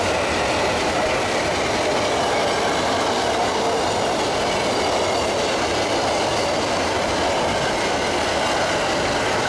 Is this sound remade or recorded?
recorded